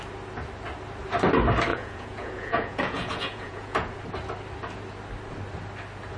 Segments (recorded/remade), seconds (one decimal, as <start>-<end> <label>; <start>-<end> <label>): 0.0-1.7 recorded; 1.7-4.0 remade; 4.0-6.2 recorded